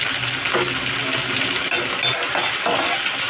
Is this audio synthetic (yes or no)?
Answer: no